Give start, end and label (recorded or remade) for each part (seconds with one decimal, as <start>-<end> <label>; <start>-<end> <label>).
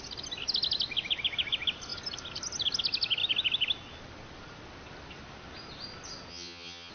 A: 0.0-6.3 recorded; 6.3-6.9 remade